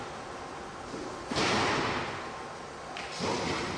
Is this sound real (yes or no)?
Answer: yes